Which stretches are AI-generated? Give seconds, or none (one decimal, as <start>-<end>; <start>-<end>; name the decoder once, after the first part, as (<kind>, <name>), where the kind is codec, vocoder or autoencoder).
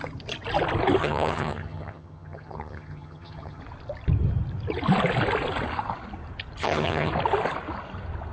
1.0-3.6 (vocoder, HiFi-GAN); 6.6-7.1